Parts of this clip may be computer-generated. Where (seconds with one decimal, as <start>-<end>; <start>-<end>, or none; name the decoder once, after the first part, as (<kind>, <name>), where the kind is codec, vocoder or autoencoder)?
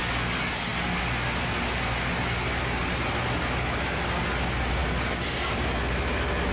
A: none